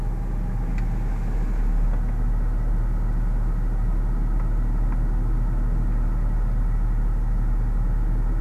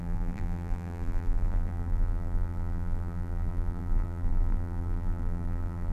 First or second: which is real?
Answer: first